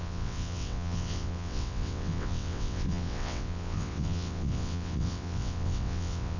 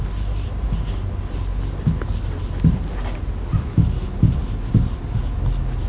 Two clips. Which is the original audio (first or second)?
second